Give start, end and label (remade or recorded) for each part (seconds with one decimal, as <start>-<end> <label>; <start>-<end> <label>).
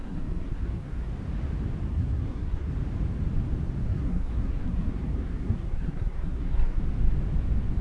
0.0-1.1 remade; 1.1-1.9 recorded; 1.9-2.7 remade; 2.7-3.9 recorded; 3.9-6.8 remade; 6.8-7.8 recorded